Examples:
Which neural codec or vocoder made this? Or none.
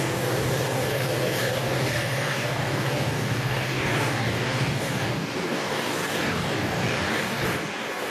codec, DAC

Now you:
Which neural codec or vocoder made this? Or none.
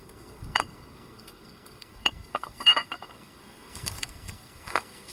codec, SNAC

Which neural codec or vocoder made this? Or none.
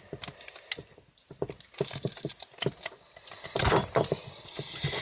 none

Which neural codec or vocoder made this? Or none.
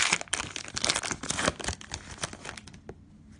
none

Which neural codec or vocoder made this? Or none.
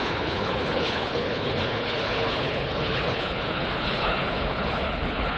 codec, HILCodec